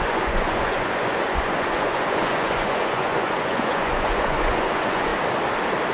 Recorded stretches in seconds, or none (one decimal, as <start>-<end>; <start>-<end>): 5.1-5.9